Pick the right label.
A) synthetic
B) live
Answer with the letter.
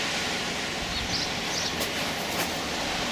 B